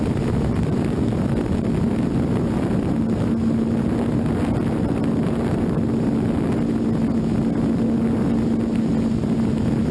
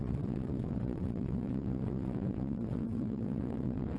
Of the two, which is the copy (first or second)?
second